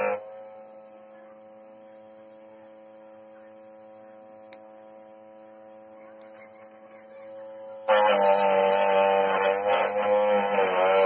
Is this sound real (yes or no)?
yes